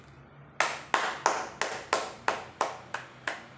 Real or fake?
real